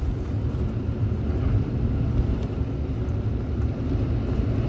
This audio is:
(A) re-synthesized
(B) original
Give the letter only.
A